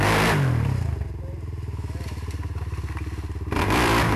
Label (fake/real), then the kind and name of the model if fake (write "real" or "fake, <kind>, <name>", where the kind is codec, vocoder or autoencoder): fake, vocoder, BigVGAN v2